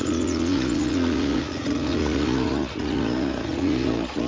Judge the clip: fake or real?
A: fake